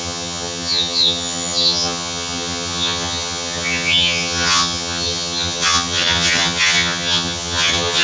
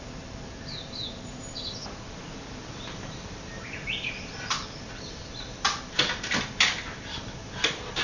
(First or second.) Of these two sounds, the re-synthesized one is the first